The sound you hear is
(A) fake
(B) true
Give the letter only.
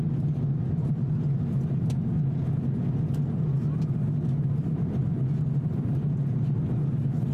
B